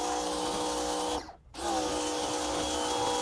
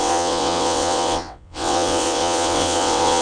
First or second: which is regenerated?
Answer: second